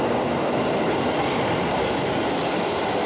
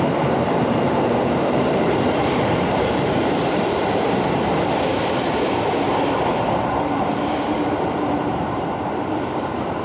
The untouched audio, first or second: first